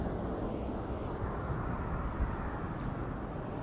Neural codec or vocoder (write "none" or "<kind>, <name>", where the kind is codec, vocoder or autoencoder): none